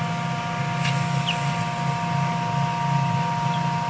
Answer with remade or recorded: recorded